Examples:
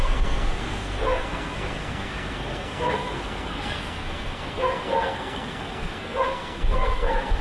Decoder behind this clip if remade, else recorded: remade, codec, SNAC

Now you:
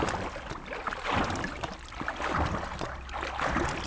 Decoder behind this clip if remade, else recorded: recorded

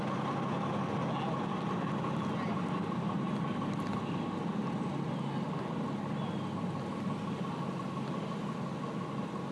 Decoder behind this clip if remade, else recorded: recorded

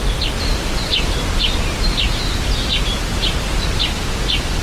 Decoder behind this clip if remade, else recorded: recorded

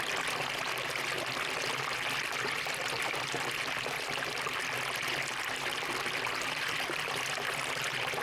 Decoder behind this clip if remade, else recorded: recorded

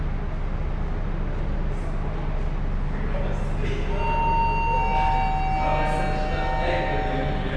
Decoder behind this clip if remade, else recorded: recorded